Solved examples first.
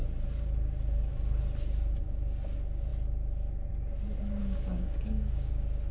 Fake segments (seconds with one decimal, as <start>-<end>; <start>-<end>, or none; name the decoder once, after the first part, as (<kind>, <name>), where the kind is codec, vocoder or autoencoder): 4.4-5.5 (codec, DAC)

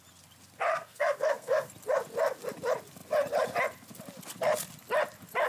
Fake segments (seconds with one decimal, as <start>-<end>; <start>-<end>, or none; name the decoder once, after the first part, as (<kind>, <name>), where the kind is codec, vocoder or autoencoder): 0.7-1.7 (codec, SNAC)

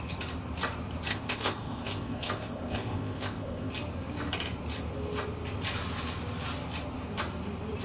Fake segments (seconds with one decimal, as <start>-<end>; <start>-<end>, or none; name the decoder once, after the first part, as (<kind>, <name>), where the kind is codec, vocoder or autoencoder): 1.1-3.7 (codec, ZipCodec)

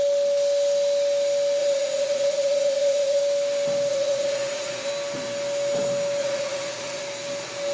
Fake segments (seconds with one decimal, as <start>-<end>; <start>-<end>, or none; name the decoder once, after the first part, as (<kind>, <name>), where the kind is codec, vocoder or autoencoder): 1.6-3.2 (vocoder, Vocos); 3.9-4.9; 6.2-7.0

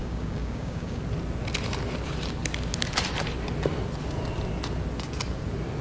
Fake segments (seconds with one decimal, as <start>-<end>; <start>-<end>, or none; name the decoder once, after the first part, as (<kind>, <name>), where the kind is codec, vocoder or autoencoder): 0.0-1.0 (codec, DAC)

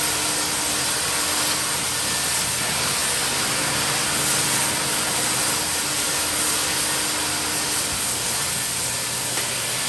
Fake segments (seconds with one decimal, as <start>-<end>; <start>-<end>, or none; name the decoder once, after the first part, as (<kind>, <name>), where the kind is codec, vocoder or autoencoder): none